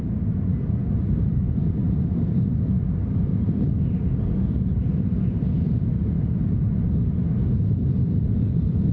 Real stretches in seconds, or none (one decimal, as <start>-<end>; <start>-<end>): 1.8-2.8; 3.3-7.7